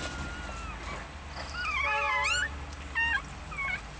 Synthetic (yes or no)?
no